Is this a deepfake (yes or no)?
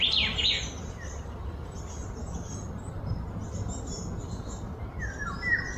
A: no